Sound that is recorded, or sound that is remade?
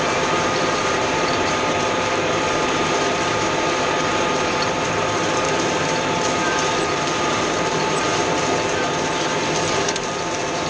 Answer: remade